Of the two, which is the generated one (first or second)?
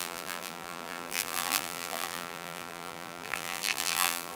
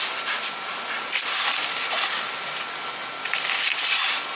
first